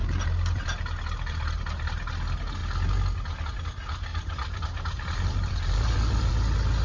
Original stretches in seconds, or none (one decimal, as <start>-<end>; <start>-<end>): 1.6-4.1; 6.3-6.8